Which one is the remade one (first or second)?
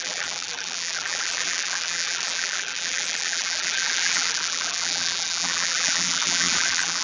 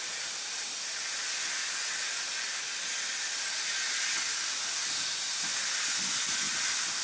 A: first